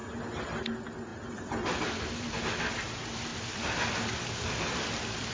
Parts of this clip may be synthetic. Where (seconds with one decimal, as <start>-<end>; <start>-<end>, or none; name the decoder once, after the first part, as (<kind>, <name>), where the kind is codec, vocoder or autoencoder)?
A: 1.1-2.4 (vocoder, BigVGAN v2); 3.3-5.3